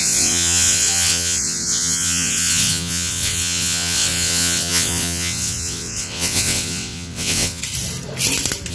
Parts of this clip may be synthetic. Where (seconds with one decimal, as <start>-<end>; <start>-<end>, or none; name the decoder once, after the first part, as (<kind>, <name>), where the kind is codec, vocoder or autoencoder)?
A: 0.0-7.6 (vocoder, WaveNeXt)